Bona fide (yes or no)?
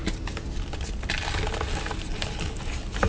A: yes